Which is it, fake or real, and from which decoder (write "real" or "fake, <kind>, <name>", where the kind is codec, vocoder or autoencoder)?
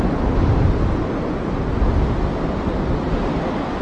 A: real